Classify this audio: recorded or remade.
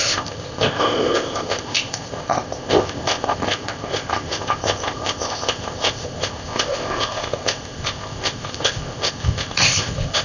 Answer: remade